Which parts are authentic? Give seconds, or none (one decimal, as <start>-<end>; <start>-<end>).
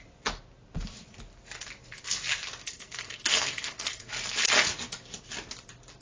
0.0-2.6; 4.1-6.0